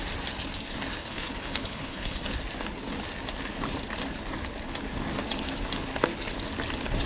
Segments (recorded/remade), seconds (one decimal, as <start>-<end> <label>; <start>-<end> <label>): 0.0-1.0 recorded; 1.0-2.2 remade; 2.2-7.1 recorded